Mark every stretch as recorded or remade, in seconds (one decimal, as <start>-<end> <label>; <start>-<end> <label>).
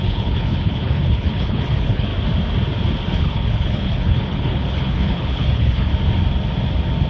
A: 0.0-2.1 remade; 2.1-3.2 recorded; 3.2-5.9 remade; 5.9-7.1 recorded